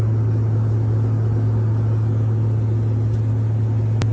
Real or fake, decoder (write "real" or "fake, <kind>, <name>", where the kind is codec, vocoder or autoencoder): real